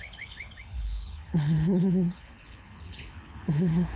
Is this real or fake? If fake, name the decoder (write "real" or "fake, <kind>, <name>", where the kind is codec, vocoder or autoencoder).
fake, codec, HILCodec